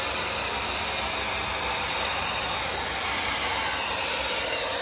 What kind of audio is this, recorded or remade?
recorded